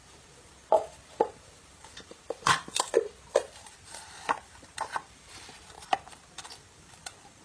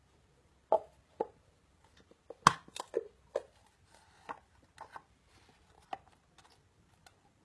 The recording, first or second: second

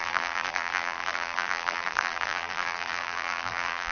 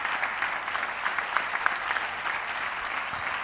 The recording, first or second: second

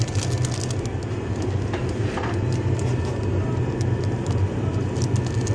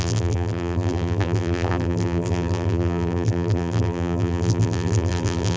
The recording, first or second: first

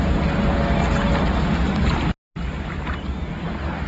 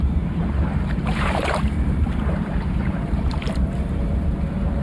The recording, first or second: first